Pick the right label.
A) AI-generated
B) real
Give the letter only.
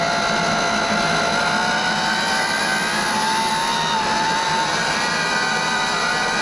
B